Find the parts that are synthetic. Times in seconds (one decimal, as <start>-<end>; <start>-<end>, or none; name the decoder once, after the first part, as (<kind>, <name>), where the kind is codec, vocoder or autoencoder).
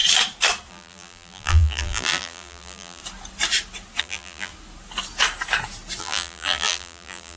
0.7-3.0 (vocoder, BigVGAN v2); 4.0-4.5; 6.0-7.4